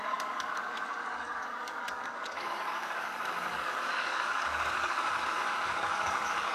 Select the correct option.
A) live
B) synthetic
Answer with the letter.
B